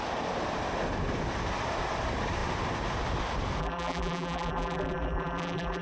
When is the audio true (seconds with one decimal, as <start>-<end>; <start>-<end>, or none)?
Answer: 0.0-3.6